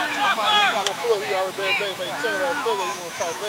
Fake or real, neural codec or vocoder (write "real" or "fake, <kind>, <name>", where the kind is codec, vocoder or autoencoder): fake, autoencoder, DAC-VAE